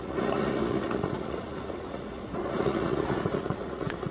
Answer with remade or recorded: remade